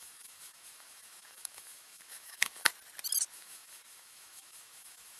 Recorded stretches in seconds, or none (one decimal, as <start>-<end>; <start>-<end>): 2.7-3.3